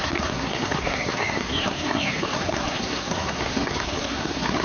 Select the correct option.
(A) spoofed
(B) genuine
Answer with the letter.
A